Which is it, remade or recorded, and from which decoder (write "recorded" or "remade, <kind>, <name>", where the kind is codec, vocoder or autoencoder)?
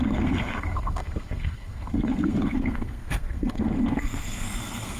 remade, codec, SNAC